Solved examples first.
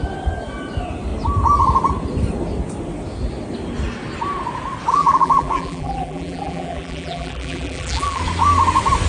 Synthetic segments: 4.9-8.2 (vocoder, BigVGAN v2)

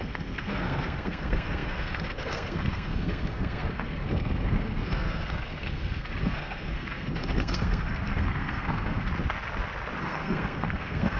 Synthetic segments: 0.0-9.1 (codec, SNAC); 10.0-11.2

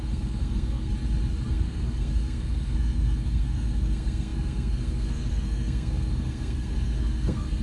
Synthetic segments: 0.0-0.9 (codec, SNAC); 1.5-7.6

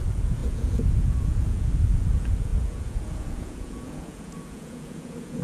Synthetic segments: 0.0-5.4 (vocoder, Vocos)

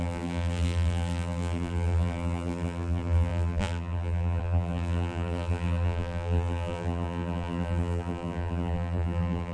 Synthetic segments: 0.0-9.5 (vocoder, BigVGAN v2)

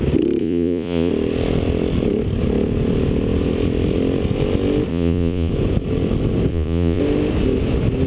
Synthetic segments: 0.4-1.1 (vocoder, Vocos); 4.9-5.5; 6.5-7.0

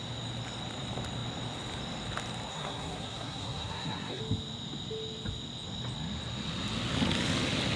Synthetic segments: 2.5-4.2 (codec, SNAC)